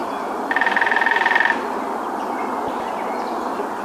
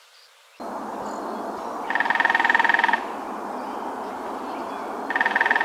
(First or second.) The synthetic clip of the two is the first